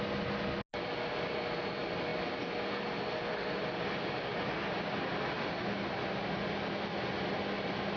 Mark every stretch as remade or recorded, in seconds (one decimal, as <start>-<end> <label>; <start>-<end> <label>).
0.0-8.0 recorded